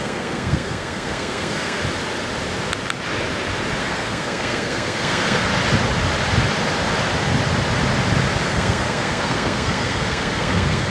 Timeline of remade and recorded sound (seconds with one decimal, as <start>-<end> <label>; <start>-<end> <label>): 0.0-1.8 remade; 1.8-3.8 recorded; 3.8-5.5 remade; 5.5-8.5 recorded; 8.5-10.9 remade